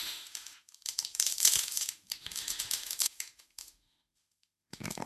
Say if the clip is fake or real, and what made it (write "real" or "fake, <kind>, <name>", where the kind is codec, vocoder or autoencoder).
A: fake, autoencoder, DAC-VAE